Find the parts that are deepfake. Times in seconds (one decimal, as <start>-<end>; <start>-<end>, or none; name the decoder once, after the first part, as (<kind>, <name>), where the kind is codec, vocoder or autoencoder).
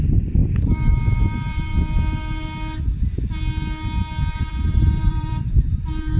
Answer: 0.0-0.4 (vocoder, BigVGAN v2); 1.2-1.7; 4.4-6.2